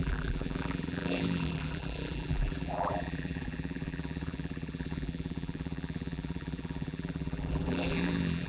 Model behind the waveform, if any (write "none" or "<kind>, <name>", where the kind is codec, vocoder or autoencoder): vocoder, BigVGAN v2